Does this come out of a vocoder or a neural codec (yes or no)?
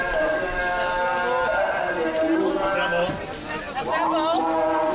no